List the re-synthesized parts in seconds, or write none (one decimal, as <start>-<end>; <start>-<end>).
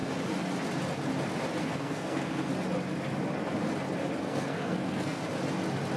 1.6-2.5; 4.2-5.2